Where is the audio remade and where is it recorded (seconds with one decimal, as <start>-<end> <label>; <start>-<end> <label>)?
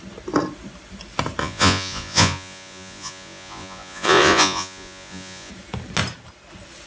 0.0-1.4 recorded; 1.4-5.5 remade; 5.5-6.9 recorded